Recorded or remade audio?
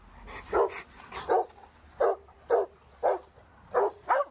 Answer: recorded